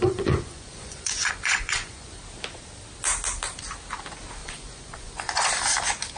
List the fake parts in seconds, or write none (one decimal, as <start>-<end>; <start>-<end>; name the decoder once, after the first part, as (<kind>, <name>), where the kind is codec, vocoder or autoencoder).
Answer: 0.0-2.2 (vocoder, Vocos); 4.4-5.5